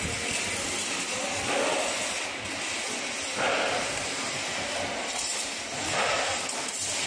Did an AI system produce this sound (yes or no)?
no